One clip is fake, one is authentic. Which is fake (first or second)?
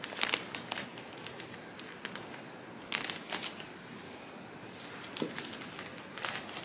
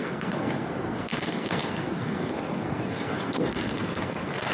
second